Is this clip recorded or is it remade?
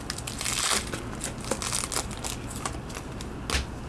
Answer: recorded